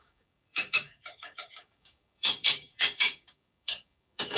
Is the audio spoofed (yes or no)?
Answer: yes